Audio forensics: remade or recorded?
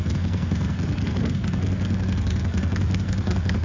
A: remade